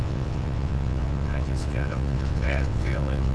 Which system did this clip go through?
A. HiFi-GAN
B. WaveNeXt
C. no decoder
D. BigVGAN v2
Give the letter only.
B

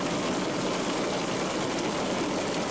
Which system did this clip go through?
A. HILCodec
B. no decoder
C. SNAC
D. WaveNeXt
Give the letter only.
B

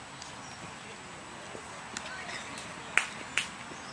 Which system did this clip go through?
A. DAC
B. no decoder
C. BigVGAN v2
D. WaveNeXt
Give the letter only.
B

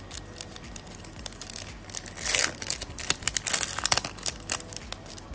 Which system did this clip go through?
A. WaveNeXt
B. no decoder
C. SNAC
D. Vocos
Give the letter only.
B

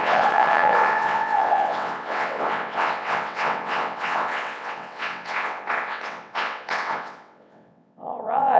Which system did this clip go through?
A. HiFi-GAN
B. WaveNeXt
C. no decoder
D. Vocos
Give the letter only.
B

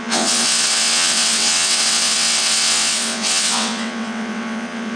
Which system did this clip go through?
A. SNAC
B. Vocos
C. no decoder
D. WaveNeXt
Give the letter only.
D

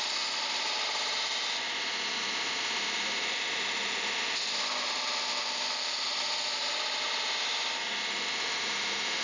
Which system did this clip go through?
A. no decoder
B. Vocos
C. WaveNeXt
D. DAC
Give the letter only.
A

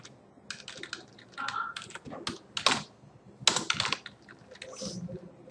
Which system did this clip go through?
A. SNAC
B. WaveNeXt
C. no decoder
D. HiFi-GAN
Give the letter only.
C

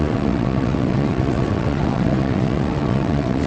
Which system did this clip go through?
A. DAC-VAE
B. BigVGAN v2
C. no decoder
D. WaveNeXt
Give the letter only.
D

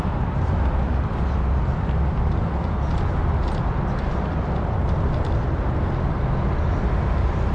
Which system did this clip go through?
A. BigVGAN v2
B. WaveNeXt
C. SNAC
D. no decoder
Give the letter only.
D